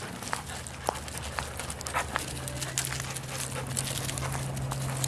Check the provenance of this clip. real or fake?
real